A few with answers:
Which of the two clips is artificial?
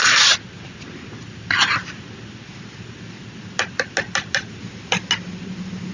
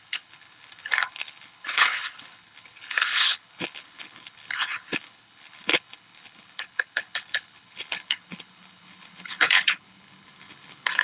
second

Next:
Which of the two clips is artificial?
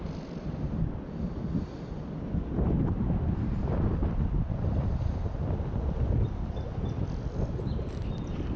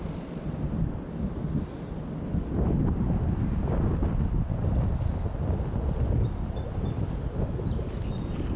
first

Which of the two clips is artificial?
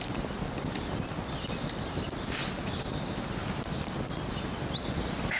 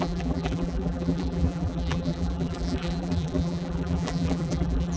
second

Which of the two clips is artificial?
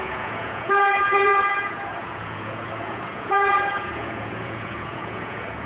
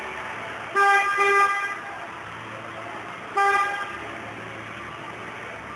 first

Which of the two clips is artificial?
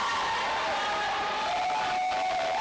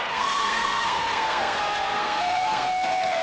second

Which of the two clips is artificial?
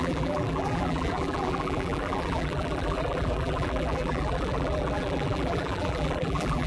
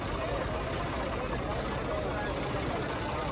first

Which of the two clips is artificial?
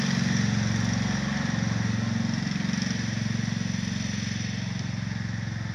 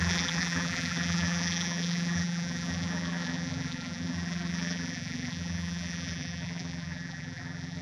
second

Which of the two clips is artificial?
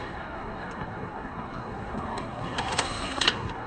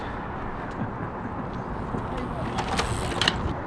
first